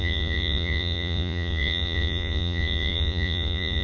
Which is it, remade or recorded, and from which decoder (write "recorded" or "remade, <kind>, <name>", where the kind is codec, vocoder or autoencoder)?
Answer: remade, vocoder, Vocos